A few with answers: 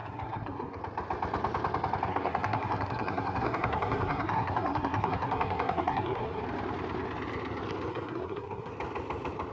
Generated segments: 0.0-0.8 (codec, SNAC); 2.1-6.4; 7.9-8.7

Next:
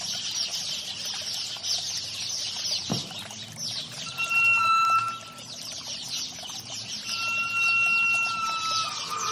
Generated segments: none

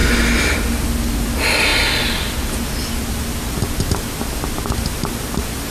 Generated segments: none